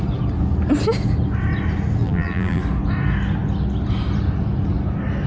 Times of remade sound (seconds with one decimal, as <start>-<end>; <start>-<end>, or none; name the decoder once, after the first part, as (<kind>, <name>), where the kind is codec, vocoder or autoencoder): 2.0-2.6 (vocoder, BigVGAN v2)